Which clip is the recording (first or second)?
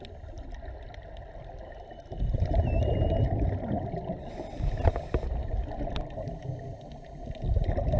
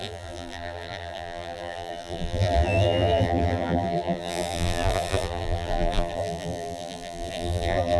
first